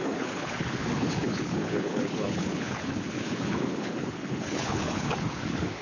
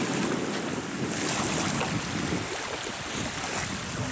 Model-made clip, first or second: first